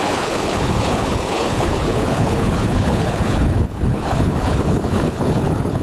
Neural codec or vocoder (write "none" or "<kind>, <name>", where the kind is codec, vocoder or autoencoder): codec, HILCodec